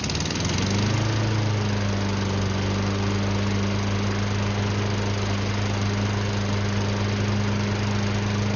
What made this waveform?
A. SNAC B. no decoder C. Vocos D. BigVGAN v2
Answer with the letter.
B